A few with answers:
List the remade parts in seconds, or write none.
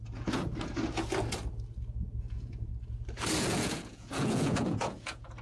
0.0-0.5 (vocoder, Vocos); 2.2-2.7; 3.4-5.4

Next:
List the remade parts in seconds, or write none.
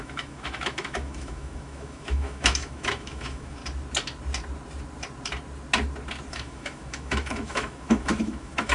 0.0-3.6 (autoencoder, DAC-VAE); 6.3-8.7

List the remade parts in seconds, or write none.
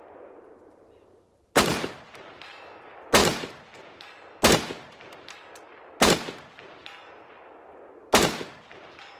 none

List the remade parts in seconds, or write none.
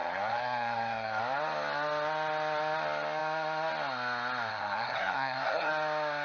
0.0-1.2 (codec, SNAC); 4.5-5.7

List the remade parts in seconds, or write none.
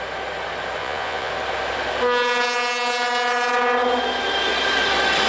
0.8-1.3 (vocoder, Vocos)